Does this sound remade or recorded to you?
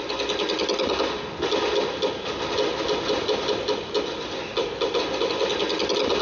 recorded